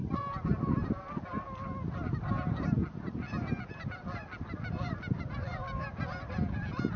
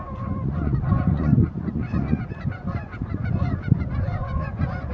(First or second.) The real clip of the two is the first